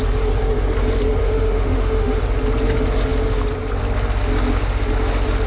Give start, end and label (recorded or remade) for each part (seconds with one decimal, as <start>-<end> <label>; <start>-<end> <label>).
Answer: 0.0-1.2 recorded; 1.2-2.2 remade; 2.2-5.5 recorded